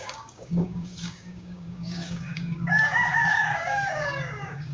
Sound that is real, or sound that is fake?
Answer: fake